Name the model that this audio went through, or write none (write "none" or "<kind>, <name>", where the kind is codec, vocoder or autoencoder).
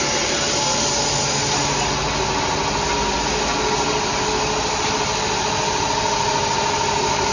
none